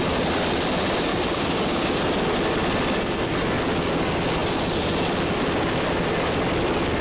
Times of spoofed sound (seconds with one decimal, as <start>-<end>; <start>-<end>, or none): 1.1-2.0